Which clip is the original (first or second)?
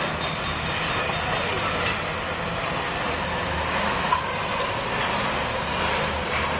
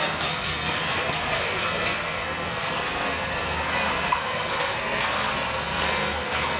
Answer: first